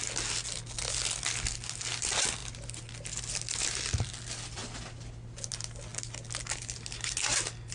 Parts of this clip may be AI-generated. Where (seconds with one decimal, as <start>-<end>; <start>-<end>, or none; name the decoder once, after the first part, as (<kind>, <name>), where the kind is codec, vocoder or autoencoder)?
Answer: none